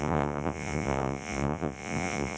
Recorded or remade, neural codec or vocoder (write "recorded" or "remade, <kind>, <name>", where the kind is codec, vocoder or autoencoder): remade, vocoder, Vocos